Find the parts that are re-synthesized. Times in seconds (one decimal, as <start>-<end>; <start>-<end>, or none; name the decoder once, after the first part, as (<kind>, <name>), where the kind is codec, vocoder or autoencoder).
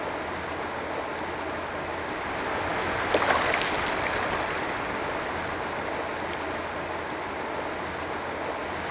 none